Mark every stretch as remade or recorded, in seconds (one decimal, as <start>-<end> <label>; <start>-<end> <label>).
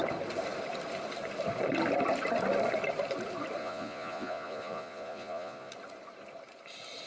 0.0-3.6 recorded; 3.6-5.7 remade; 5.7-7.1 recorded